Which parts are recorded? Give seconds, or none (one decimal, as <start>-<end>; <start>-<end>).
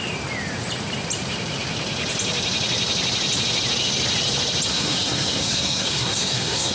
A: 0.0-4.7